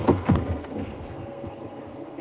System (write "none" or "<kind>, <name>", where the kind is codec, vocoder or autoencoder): codec, SNAC